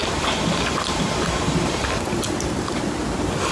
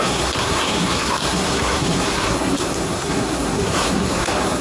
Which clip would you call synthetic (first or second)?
second